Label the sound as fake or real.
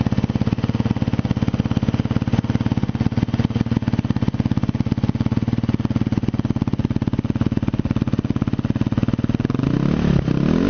real